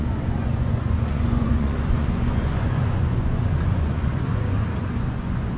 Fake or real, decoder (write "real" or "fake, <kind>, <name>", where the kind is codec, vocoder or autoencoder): fake, vocoder, Vocos